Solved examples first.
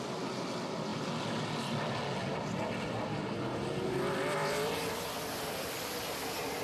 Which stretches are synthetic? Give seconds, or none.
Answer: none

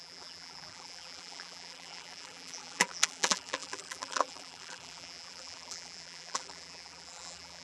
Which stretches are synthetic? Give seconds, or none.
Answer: 0.0-7.6 (vocoder, BigVGAN v2)

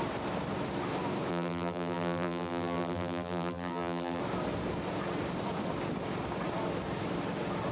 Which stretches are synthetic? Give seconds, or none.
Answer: 1.3-4.2 (vocoder, BigVGAN v2)

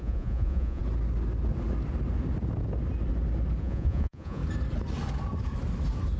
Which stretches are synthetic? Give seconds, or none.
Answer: 0.0-0.8 (vocoder, Vocos); 3.6-4.4

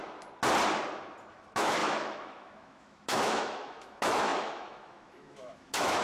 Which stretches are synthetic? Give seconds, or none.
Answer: 1.3-6.0 (autoencoder, DAC-VAE)